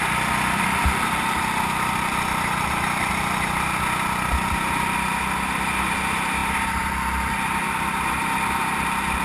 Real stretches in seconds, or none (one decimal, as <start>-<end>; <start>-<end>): 3.1-5.8